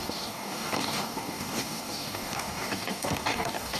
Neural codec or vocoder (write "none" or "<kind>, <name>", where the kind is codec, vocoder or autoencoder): codec, DAC